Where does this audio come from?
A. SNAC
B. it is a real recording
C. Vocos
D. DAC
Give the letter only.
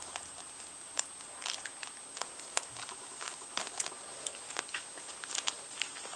B